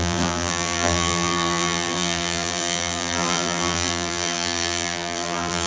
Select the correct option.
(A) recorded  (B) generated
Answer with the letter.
B